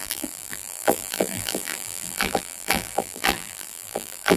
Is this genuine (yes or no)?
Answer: no